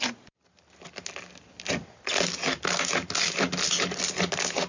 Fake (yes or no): no